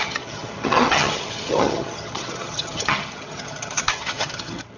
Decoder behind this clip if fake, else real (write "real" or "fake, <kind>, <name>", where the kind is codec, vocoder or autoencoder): fake, vocoder, HiFi-GAN